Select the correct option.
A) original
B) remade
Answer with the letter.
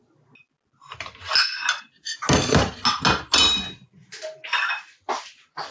A